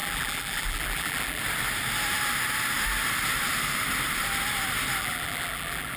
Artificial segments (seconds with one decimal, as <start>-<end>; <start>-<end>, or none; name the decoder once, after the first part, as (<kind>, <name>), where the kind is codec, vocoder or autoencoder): 0.0-1.4 (vocoder, BigVGAN v2); 5.0-6.0